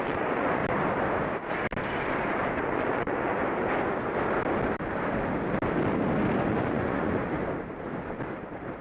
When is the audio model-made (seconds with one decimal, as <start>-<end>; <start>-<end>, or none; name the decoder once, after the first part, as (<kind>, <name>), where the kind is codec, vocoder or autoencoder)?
0.0-0.6 (vocoder, Vocos); 2.4-3.4; 6.5-7.4

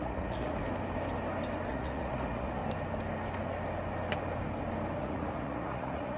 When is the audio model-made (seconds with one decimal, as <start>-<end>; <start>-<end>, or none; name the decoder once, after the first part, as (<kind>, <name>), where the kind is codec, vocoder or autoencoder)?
0.0-0.6 (vocoder, Vocos); 1.7-2.6; 5.0-6.2

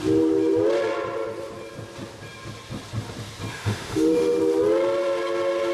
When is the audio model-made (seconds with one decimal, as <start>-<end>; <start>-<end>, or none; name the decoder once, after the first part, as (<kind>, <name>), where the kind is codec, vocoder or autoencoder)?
3.5-4.4 (autoencoder, DAC-VAE)